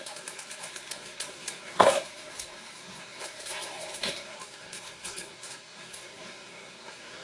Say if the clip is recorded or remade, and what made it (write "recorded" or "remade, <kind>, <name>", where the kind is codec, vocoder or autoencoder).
remade, codec, SNAC